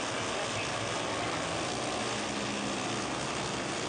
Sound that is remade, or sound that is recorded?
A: recorded